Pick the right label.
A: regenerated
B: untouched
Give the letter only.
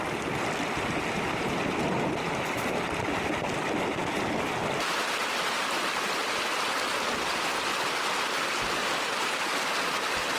B